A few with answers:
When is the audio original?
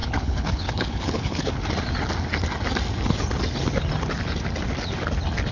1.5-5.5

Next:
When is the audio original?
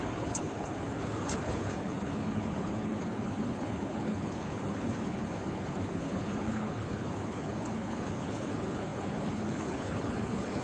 none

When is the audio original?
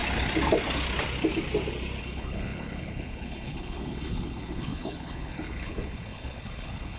0.0-2.0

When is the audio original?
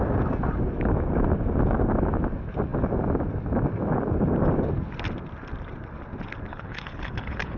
0.0-6.5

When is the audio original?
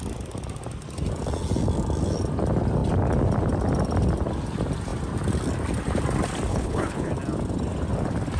0.0-6.5; 7.1-8.4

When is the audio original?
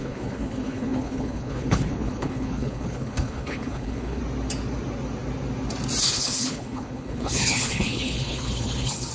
4.2-6.0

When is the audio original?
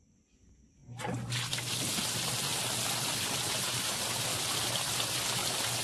0.0-5.8